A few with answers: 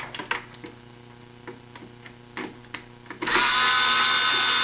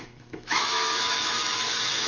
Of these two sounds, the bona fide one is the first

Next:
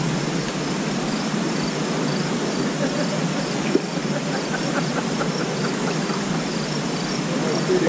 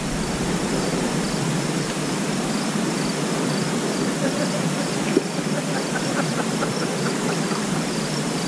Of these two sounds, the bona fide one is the first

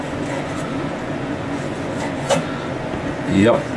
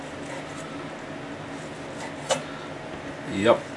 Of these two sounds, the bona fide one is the second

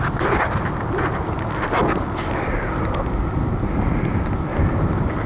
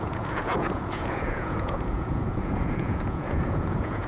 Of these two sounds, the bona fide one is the first